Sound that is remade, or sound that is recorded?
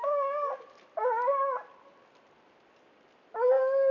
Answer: recorded